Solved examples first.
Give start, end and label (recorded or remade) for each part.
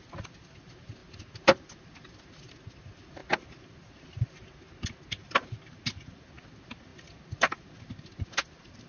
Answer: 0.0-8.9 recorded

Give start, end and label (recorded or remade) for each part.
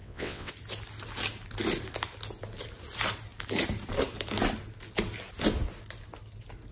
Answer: 0.0-0.5 remade; 0.5-6.7 recorded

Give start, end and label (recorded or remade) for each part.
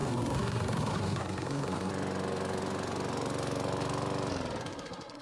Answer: 0.0-1.9 remade; 1.9-4.6 recorded; 4.6-5.2 remade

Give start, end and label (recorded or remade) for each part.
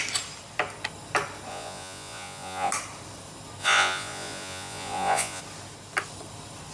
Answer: 0.0-1.5 recorded; 1.5-2.7 remade; 2.7-3.6 recorded; 3.6-5.4 remade; 5.4-6.7 recorded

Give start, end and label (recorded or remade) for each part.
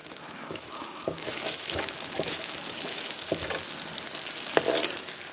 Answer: 0.0-3.2 remade; 3.2-5.3 recorded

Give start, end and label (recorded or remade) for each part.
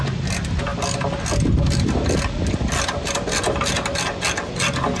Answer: 0.0-5.0 recorded